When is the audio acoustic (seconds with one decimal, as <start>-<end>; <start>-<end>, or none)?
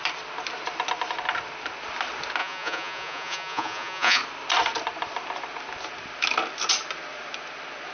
0.0-2.4; 4.2-7.9